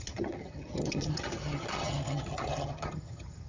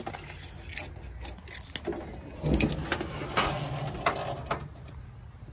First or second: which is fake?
first